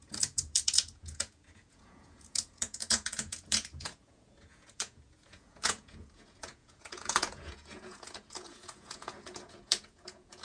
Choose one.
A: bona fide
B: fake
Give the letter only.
B